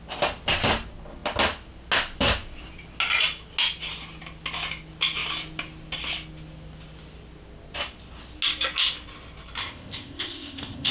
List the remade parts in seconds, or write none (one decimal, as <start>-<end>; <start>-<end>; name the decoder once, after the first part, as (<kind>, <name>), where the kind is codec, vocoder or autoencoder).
9.6-10.9 (codec, ZipCodec)